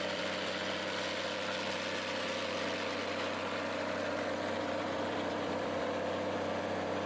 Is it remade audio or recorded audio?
remade